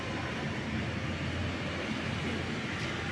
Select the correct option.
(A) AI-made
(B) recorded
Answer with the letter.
B